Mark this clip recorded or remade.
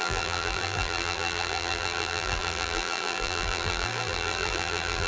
remade